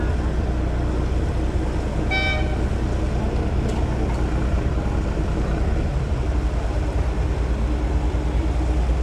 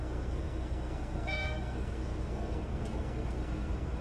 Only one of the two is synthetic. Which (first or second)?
second